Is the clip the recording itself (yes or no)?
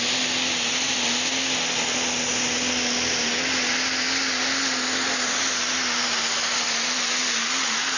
yes